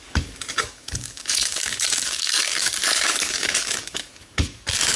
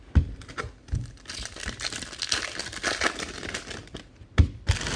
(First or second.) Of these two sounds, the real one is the second